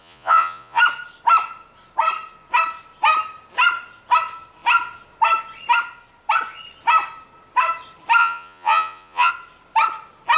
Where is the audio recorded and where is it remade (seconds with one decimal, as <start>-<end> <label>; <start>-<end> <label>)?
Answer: 0.0-0.8 remade; 0.8-8.2 recorded; 8.2-9.3 remade; 9.3-10.4 recorded